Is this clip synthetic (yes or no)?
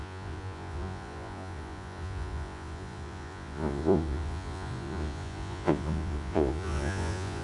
yes